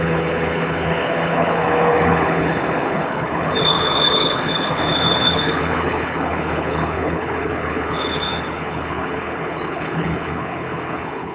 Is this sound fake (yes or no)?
yes